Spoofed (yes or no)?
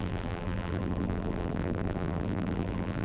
yes